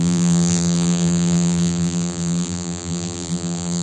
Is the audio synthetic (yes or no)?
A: yes